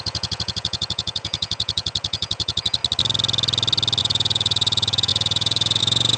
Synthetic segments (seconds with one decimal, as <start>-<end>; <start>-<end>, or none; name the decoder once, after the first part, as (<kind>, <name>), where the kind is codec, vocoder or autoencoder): 0.0-2.8 (vocoder, Vocos); 4.0-6.2